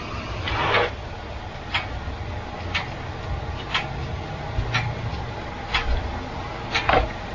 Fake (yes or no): no